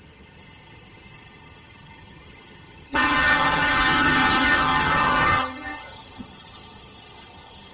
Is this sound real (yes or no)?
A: no